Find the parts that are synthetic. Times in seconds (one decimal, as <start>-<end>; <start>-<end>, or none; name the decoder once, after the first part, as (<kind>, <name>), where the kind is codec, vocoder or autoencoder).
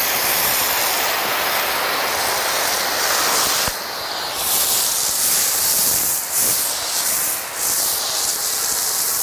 none